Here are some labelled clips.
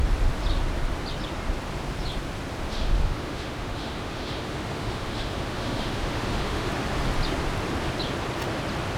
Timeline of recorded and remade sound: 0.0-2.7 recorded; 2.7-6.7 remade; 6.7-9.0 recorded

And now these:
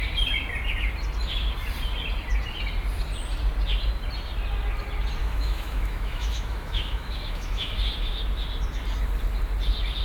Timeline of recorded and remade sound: 0.0-5.2 recorded; 5.2-7.7 remade; 7.7-10.0 recorded

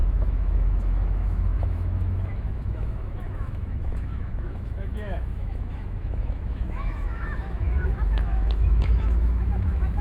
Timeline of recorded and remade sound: 0.0-10.0 remade

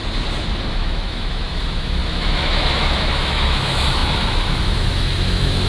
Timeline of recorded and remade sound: 0.0-0.7 recorded; 0.7-5.7 remade

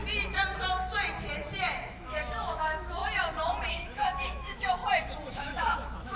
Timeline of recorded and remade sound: 0.0-1.9 recorded; 1.9-3.0 remade; 3.0-3.7 recorded; 3.7-4.8 remade; 4.8-5.3 recorded; 5.3-6.2 remade

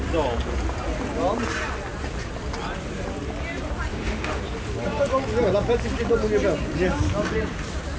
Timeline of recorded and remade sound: 0.0-3.9 recorded; 3.9-4.4 remade; 4.4-8.0 recorded

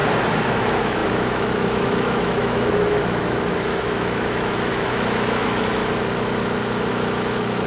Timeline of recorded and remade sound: 0.0-0.5 recorded; 0.5-5.8 remade; 5.8-6.9 recorded; 6.9-7.7 remade

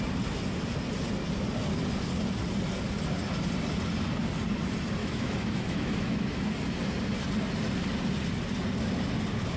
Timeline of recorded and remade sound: 0.0-5.0 recorded; 5.0-6.5 remade; 6.5-9.6 recorded